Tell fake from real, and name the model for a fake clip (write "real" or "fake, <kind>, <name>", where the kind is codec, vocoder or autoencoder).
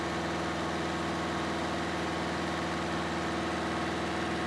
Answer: real